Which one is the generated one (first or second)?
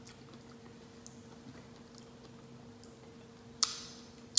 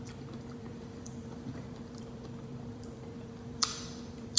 second